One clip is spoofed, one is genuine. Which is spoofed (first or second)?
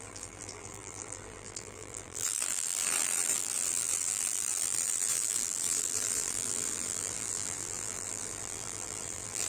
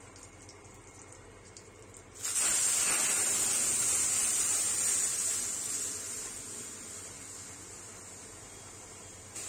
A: first